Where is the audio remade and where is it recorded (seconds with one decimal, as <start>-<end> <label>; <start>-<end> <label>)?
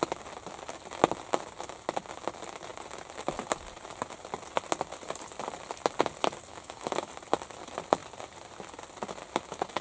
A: 0.0-6.5 recorded; 6.5-7.1 remade; 7.1-9.8 recorded